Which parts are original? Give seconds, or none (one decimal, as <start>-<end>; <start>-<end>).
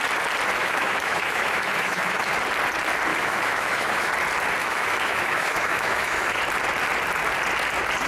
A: 0.0-0.6; 2.3-3.1; 4.1-4.6; 6.4-8.1